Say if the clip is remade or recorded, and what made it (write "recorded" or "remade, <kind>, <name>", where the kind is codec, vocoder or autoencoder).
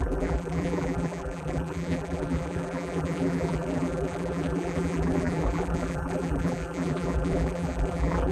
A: remade, vocoder, BigVGAN v2